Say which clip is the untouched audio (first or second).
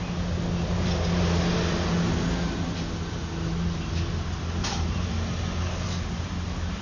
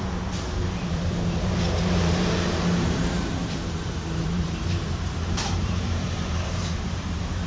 first